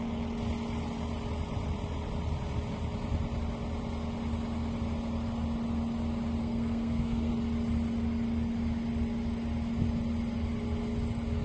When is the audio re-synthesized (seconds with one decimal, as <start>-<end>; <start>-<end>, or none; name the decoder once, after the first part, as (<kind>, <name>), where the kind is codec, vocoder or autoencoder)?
6.4-7.3 (codec, SNAC)

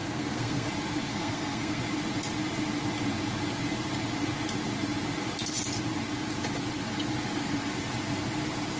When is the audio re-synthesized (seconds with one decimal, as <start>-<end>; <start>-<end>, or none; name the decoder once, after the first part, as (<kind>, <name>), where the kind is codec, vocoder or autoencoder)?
0.0-0.7 (codec, SNAC); 1.1-1.8

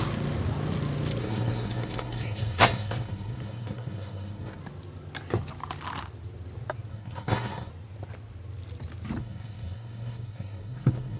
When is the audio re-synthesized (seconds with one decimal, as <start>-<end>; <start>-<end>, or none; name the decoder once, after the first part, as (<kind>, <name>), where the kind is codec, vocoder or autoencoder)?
1.2-4.6 (codec, SNAC); 6.9-7.7; 9.2-11.2